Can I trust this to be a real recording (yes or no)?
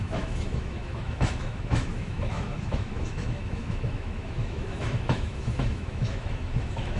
no